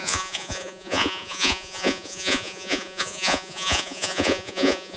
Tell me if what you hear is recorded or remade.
remade